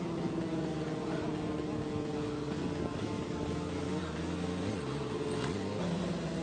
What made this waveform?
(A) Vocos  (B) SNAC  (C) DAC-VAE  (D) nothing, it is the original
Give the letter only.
D